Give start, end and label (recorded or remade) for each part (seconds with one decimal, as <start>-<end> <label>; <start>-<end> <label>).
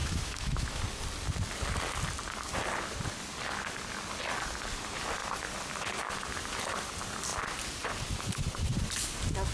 0.0-0.8 remade; 0.8-9.5 recorded